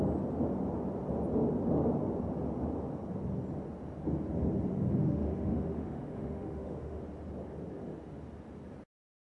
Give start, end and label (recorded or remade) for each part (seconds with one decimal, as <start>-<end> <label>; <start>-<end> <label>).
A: 0.0-4.7 recorded; 4.7-7.0 remade; 7.0-9.2 recorded